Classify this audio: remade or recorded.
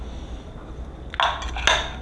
recorded